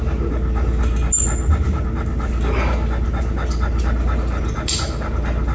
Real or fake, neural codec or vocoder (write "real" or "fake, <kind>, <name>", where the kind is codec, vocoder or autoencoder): real